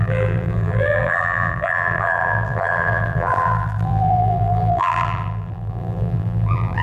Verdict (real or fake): fake